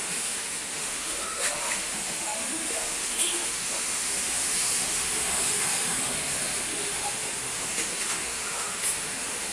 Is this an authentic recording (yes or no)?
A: no